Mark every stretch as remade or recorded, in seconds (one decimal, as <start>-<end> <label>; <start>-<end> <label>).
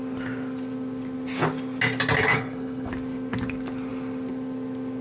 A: 0.0-2.3 recorded; 2.3-2.9 remade; 2.9-5.0 recorded